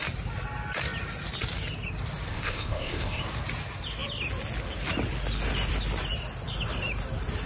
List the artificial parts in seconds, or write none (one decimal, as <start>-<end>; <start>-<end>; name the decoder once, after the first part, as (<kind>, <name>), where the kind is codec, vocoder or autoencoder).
2.3-3.2 (codec, ZipCodec)